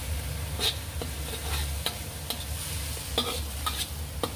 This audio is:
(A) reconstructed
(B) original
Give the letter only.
B